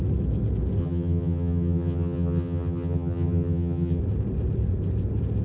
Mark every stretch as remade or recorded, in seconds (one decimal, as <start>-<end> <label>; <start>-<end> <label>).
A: 0.0-0.8 recorded; 0.8-4.0 remade; 4.0-5.4 recorded